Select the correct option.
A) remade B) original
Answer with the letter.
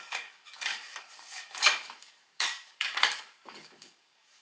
A